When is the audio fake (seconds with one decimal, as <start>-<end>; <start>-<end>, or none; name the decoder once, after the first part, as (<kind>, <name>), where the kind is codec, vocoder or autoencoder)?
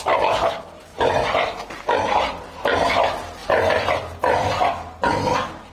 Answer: 0.9-2.2 (vocoder, BigVGAN v2); 3.4-4.0